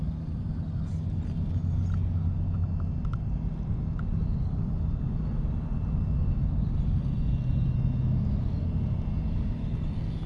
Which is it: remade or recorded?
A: recorded